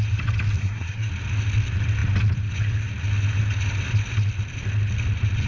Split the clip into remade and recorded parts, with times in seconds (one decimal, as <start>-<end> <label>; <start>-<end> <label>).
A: 0.0-0.6 recorded; 0.6-1.1 remade; 1.1-5.5 recorded